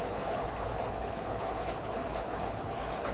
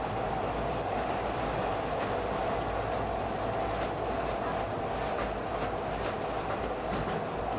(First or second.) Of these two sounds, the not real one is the first